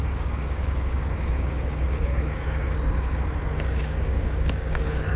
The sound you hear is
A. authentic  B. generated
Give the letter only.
B